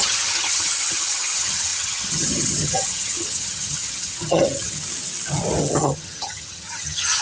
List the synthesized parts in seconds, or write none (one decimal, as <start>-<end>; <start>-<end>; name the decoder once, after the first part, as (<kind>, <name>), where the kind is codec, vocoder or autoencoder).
0.0-4.8 (vocoder, HiFi-GAN); 5.6-7.2

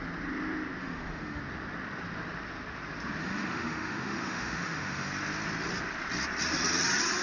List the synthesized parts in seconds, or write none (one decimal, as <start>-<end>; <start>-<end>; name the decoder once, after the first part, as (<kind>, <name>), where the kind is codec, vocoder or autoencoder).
0.8-1.4 (autoencoder, DAC-VAE); 3.2-5.1

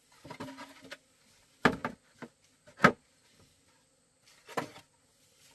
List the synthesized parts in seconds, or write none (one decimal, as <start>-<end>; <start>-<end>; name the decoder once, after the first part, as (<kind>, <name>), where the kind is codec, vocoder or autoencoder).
none

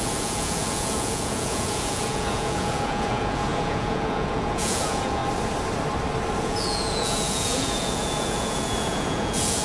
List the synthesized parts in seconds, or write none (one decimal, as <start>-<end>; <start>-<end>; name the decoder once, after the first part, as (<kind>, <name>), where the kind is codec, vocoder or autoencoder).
0.0-5.2 (vocoder, Vocos); 6.4-9.6

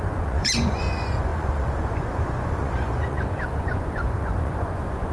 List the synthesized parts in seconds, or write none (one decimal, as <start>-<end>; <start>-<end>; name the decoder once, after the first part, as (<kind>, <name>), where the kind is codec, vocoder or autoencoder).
0.0-5.1 (vocoder, Vocos)

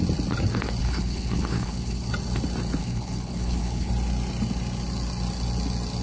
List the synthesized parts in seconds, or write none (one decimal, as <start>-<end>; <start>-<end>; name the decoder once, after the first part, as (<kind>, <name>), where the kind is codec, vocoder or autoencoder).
0.8-2.1 (codec, HILCodec); 2.8-3.9